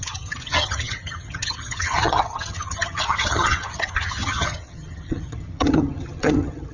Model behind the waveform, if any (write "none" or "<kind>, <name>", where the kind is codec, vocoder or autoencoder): vocoder, HiFi-GAN